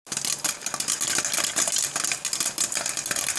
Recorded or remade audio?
recorded